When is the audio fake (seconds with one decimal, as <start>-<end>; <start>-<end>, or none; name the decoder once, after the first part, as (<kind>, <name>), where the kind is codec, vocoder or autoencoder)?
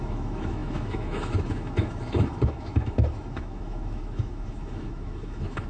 0.0-5.7 (autoencoder, DAC-VAE)